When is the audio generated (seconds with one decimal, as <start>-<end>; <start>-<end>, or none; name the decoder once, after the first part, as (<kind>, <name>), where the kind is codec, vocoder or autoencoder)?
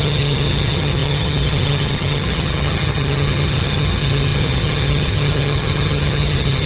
0.0-6.7 (vocoder, HiFi-GAN)